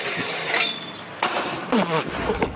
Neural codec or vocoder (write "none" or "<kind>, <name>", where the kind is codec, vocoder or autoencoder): none